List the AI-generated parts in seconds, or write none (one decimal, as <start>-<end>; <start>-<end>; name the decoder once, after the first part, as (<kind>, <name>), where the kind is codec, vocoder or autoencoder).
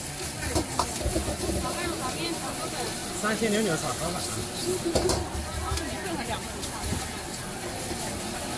none